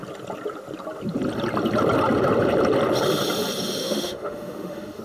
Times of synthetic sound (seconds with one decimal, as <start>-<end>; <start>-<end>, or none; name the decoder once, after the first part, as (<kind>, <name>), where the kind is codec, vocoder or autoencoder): 3.8-5.0 (autoencoder, DAC-VAE)

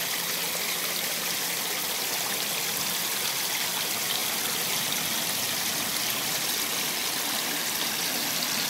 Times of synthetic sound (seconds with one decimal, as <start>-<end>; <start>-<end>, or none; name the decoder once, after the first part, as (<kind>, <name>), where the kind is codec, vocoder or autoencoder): none

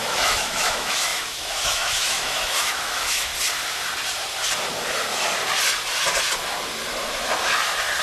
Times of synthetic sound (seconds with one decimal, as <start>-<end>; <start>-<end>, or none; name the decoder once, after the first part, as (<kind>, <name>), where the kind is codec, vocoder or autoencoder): 0.0-3.3 (autoencoder, DAC-VAE)